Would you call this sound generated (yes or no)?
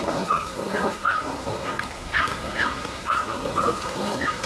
yes